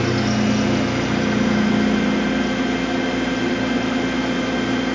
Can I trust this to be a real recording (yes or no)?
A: yes